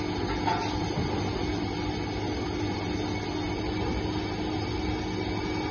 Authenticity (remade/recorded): recorded